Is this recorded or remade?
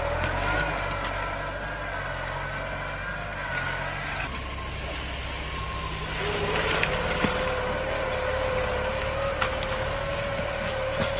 recorded